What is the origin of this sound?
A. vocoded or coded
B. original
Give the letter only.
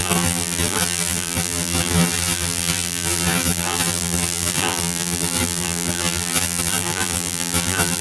A